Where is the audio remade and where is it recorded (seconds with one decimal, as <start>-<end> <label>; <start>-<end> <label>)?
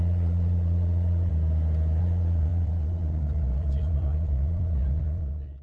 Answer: 0.0-1.3 remade; 1.3-2.0 recorded; 2.0-5.6 remade